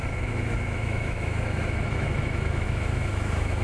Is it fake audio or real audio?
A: fake